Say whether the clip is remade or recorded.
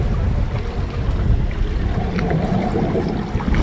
recorded